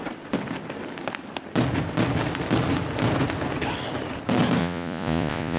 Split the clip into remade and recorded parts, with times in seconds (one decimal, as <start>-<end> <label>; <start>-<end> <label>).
0.0-4.6 recorded; 4.6-5.6 remade